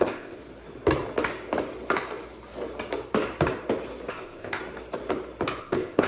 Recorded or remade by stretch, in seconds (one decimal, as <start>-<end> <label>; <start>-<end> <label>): 0.0-0.4 remade; 0.4-4.1 recorded; 4.1-4.6 remade; 4.6-5.6 recorded; 5.6-6.1 remade